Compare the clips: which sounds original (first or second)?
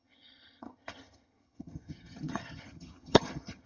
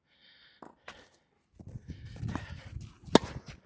second